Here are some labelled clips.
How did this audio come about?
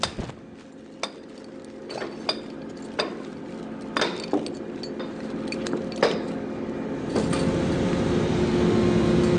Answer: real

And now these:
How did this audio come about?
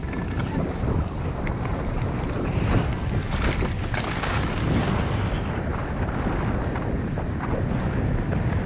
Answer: real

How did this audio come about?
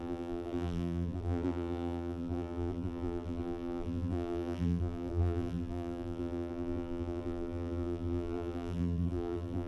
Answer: fake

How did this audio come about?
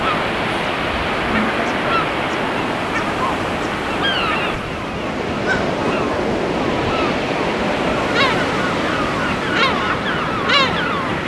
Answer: fake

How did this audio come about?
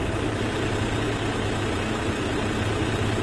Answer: fake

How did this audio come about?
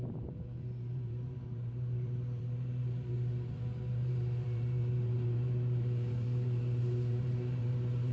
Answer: fake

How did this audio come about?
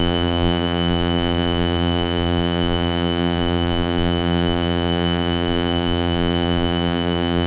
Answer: fake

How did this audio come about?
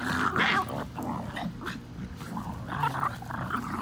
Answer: real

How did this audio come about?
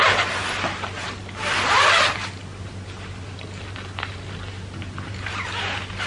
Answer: real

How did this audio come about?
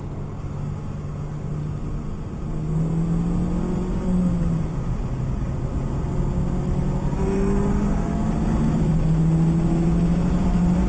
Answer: real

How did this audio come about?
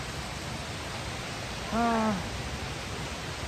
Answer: real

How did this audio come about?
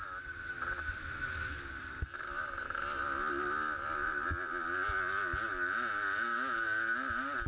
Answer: real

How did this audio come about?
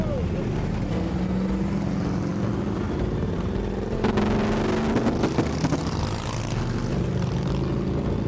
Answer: real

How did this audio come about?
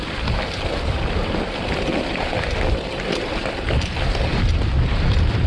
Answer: real